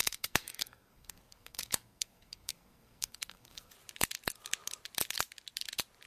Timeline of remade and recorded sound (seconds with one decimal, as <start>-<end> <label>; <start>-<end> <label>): 0.0-3.7 remade; 3.7-6.1 recorded